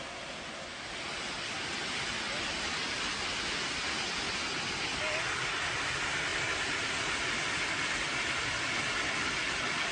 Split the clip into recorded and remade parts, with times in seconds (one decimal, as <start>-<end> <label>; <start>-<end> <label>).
0.0-9.9 recorded